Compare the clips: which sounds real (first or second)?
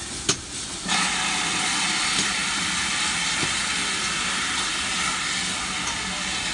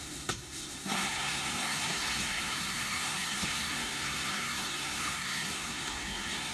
first